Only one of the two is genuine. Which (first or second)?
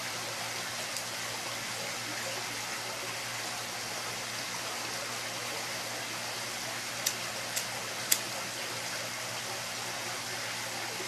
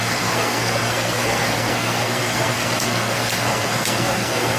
first